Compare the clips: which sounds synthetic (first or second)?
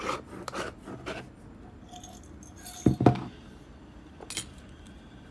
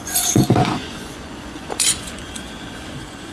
second